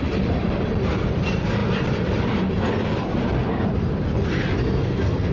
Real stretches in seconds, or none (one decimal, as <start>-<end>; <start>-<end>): 0.0-4.6